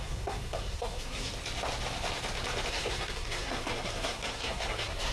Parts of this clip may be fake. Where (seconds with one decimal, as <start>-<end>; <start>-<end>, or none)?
0.0-1.3; 2.7-5.1